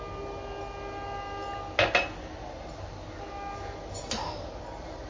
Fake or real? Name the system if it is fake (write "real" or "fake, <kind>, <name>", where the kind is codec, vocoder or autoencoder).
real